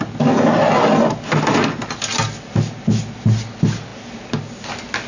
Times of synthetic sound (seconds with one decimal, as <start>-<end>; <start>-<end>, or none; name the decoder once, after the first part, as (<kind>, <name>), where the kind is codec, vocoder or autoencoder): none